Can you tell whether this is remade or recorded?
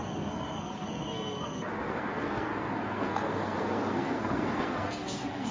remade